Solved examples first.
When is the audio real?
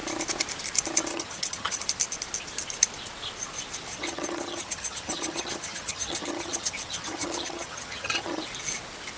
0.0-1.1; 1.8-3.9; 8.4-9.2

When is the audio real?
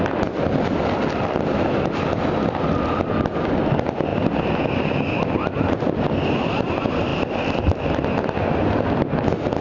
0.0-9.6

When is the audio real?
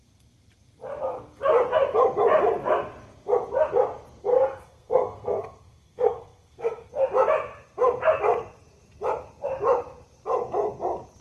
0.0-4.3; 6.9-11.2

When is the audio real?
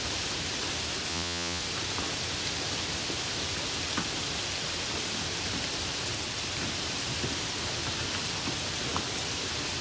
0.0-1.1; 1.6-9.8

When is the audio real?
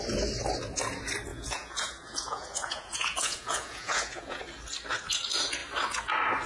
0.0-1.3; 4.4-6.5